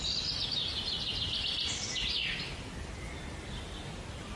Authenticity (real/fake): real